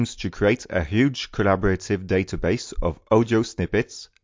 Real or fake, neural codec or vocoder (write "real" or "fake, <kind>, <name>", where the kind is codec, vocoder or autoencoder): real